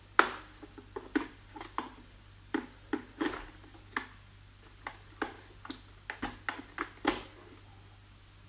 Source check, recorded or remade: recorded